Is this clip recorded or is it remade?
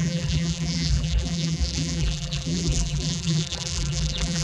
remade